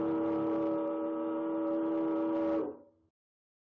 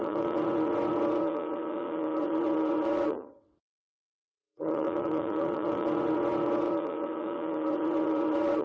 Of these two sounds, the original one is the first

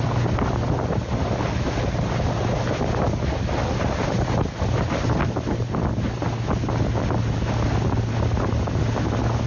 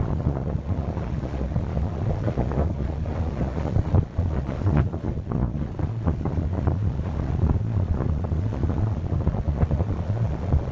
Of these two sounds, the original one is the first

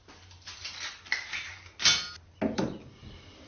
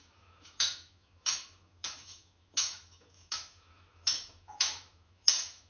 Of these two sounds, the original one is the first